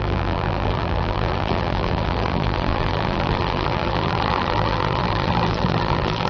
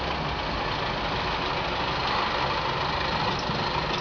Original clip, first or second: second